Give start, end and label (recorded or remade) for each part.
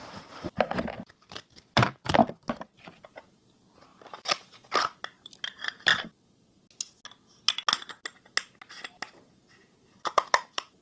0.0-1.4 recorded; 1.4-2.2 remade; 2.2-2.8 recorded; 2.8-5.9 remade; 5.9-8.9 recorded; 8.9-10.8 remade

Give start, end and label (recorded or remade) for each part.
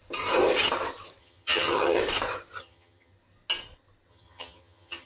0.0-1.2 recorded; 1.2-2.0 remade; 2.0-2.6 recorded; 2.6-3.1 remade; 3.1-4.1 recorded; 4.1-5.1 remade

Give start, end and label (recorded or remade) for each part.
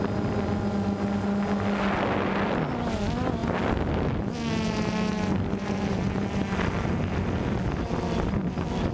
0.0-8.9 recorded